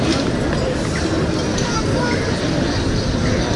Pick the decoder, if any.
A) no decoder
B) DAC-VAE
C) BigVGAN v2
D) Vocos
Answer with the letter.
A